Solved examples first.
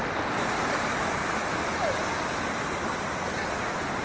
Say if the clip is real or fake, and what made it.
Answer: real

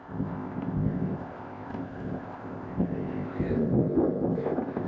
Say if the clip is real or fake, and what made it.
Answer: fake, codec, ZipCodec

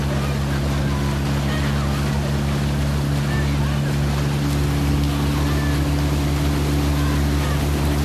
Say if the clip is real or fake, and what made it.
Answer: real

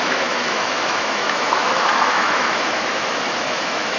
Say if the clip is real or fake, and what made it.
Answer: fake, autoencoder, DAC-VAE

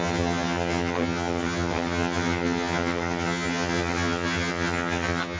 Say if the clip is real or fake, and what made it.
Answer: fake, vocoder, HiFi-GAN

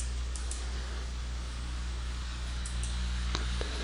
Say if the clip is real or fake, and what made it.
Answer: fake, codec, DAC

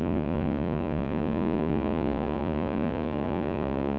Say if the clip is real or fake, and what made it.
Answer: fake, vocoder, Vocos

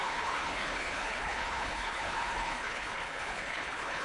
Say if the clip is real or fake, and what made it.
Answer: fake, codec, HILCodec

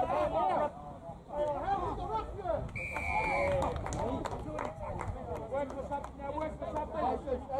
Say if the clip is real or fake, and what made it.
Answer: real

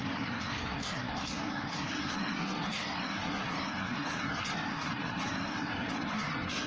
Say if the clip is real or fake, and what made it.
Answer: fake, codec, SNAC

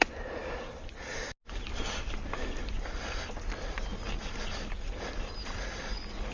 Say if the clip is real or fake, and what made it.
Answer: real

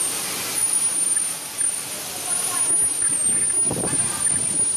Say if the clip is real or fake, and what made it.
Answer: real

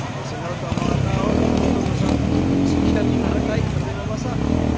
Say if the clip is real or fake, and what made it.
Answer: real